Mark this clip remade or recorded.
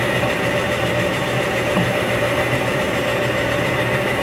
remade